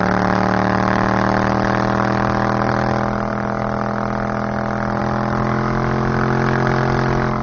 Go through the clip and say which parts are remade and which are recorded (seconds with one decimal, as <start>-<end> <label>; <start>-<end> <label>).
0.0-7.4 recorded